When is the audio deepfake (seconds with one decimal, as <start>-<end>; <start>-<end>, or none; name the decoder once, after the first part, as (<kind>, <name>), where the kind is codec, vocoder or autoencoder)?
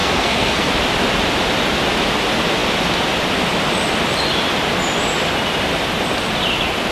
0.0-0.7 (codec, SNAC)